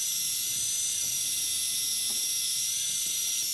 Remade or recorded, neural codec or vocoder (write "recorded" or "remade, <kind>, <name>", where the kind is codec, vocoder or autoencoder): recorded